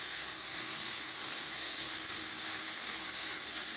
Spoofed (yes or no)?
yes